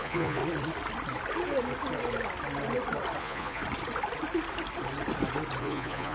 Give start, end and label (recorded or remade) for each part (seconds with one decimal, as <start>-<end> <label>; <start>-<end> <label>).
0.0-0.4 remade; 0.4-3.2 recorded; 3.2-3.6 remade; 3.6-5.6 recorded; 5.6-6.1 remade